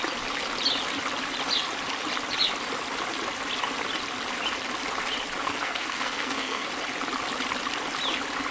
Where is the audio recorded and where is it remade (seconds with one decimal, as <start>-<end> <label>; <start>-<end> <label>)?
0.0-5.4 recorded; 5.4-6.7 remade; 6.7-8.5 recorded